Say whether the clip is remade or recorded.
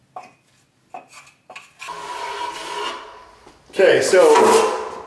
recorded